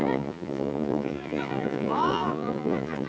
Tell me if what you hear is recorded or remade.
remade